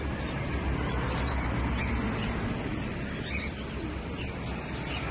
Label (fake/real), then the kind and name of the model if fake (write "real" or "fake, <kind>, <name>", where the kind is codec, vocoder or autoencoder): real